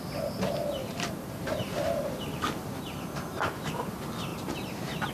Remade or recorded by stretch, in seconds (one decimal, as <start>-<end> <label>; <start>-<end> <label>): 0.0-0.8 recorded; 0.8-3.9 remade; 3.9-4.3 recorded; 4.3-5.1 remade